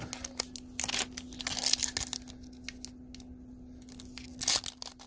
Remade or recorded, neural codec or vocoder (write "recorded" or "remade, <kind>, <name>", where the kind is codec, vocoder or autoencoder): recorded